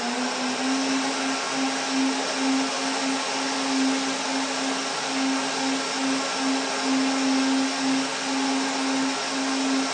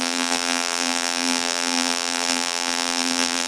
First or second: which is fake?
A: second